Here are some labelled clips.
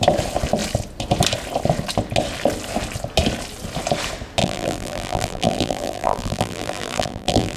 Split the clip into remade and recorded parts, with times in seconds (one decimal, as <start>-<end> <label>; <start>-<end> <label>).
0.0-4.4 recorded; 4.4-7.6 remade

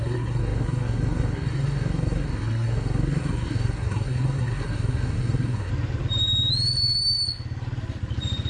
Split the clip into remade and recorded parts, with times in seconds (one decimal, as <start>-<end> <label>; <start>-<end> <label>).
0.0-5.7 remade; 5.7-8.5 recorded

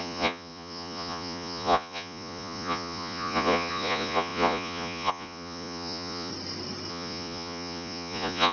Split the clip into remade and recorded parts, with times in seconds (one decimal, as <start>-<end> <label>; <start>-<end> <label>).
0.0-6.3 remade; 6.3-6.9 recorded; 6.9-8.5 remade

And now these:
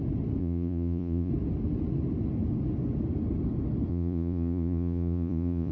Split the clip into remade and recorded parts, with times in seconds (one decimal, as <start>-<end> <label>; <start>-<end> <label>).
0.0-0.4 recorded; 0.4-1.3 remade; 1.3-3.9 recorded; 3.9-5.7 remade

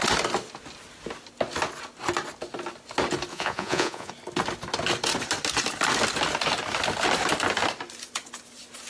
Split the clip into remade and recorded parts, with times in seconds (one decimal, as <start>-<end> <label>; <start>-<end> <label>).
0.0-3.3 recorded; 3.3-4.1 remade; 4.1-8.9 recorded

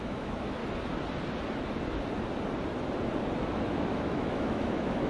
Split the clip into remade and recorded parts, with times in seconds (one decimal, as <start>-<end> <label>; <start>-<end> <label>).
0.0-0.6 remade; 0.6-3.7 recorded; 3.7-5.1 remade

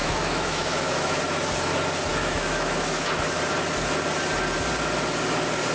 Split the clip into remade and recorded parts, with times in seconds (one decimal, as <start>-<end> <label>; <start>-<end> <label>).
0.0-1.2 remade; 1.2-2.1 recorded; 2.1-3.1 remade; 3.1-5.7 recorded

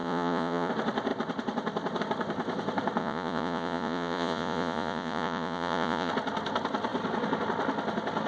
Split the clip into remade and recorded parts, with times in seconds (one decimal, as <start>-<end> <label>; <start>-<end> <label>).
0.0-0.7 remade; 0.7-3.0 recorded; 3.0-6.1 remade; 6.1-8.3 recorded